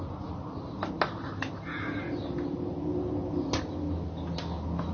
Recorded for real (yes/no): yes